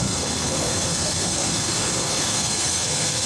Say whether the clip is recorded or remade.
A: remade